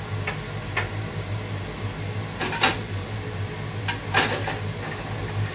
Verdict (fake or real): real